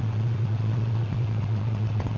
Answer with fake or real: fake